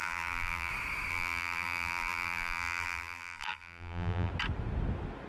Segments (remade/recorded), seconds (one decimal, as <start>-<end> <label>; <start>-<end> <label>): 0.0-0.7 remade; 0.7-1.1 recorded; 1.1-4.3 remade; 4.3-5.3 recorded